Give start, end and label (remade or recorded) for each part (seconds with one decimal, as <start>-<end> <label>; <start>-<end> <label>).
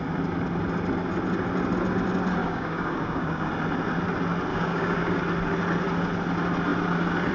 0.0-2.4 recorded; 2.4-3.5 remade; 3.5-4.5 recorded; 4.5-5.2 remade; 5.2-7.3 recorded